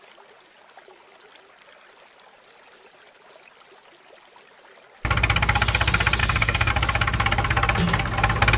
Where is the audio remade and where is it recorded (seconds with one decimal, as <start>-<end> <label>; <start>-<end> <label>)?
0.0-6.2 recorded; 6.2-6.7 remade; 6.7-8.6 recorded